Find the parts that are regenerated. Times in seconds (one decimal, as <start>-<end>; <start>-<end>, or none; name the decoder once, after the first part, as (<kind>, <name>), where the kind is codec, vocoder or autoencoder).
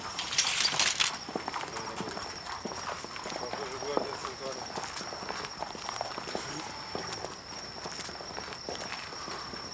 4.2-4.7 (vocoder, BigVGAN v2)